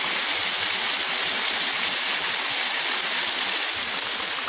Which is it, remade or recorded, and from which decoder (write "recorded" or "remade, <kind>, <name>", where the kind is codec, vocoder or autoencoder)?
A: recorded